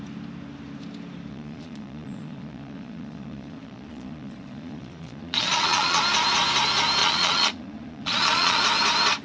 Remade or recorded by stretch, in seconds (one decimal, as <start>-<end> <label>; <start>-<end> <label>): 0.0-1.3 recorded; 1.3-6.0 remade; 6.0-7.0 recorded; 7.0-8.6 remade; 8.6-9.2 recorded